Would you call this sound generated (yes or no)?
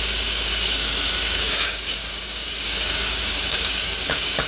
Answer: yes